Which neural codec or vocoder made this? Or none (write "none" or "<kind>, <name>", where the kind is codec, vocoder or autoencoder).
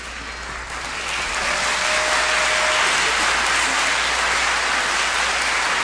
none